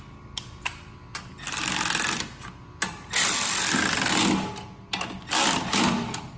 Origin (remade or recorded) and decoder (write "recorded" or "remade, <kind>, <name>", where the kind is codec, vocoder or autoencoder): recorded